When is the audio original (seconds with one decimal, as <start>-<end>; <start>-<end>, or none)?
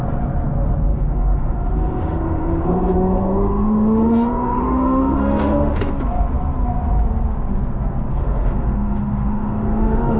0.0-0.9; 5.8-8.1